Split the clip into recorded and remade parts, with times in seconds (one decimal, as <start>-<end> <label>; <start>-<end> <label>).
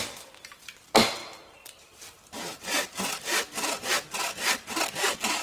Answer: 0.0-1.2 recorded; 1.2-1.8 remade; 1.8-2.5 recorded; 2.5-3.4 remade; 3.4-5.4 recorded